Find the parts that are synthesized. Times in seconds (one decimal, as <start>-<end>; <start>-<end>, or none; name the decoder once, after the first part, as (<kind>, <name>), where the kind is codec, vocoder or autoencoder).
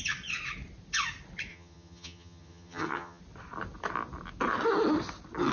1.5-3.2 (vocoder, HiFi-GAN)